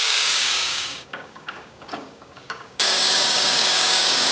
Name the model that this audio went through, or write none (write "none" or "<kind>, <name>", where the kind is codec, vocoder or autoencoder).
codec, DAC